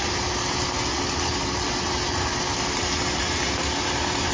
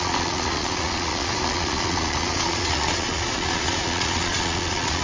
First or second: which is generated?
second